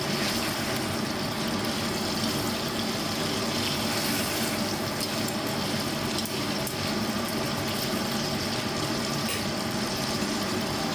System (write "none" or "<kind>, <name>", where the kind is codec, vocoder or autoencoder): none